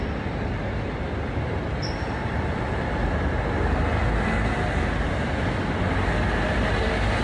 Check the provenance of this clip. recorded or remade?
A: recorded